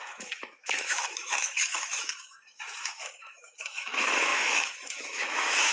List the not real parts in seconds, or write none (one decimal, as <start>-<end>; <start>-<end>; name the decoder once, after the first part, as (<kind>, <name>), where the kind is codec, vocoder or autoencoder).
0.0-5.7 (autoencoder, DAC-VAE)